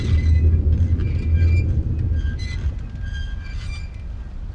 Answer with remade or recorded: recorded